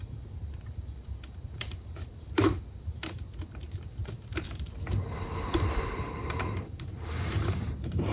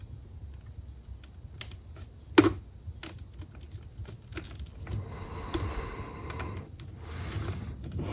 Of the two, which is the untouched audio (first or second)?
second